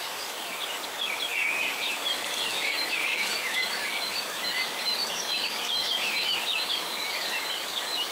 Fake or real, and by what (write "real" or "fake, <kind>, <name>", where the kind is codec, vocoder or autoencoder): fake, codec, DAC